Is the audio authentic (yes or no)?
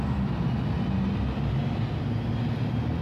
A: yes